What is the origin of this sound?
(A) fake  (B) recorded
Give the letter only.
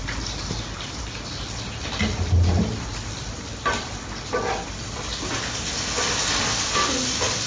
B